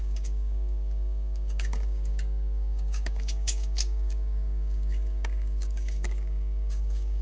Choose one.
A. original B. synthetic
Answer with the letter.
B